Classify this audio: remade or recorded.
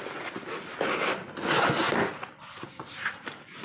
recorded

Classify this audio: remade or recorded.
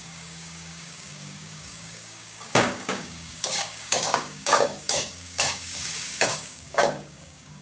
remade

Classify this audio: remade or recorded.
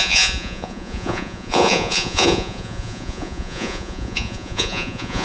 remade